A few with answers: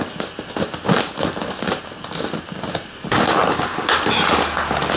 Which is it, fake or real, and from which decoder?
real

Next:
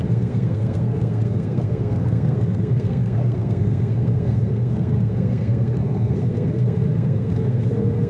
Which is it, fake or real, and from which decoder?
fake, codec, SNAC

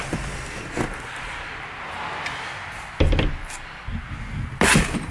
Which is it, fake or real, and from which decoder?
real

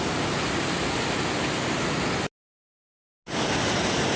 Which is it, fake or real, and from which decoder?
real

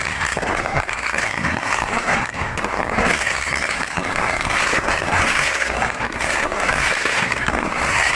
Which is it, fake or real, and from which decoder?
fake, codec, SNAC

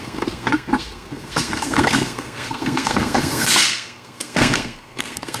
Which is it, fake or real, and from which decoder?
fake, codec, SNAC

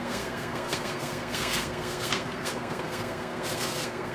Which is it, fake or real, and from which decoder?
fake, codec, SNAC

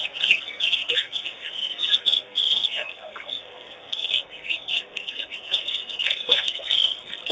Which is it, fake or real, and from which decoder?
fake, codec, SNAC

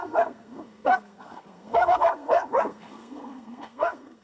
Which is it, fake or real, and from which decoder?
fake, codec, SNAC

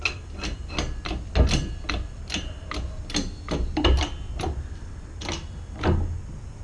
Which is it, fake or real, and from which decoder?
real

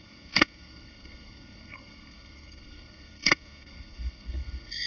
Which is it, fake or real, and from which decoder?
fake, codec, SNAC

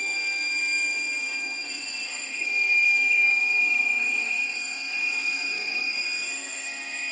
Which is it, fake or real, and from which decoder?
fake, codec, SNAC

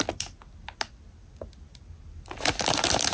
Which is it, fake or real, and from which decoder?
real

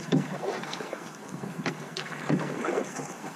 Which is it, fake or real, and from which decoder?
fake, codec, SNAC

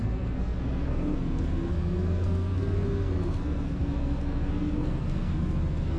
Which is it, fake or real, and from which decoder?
fake, codec, SNAC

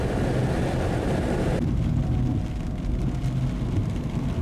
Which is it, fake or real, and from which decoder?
real